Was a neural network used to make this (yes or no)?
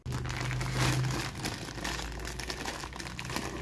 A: no